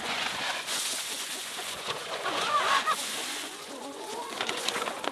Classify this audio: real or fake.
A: fake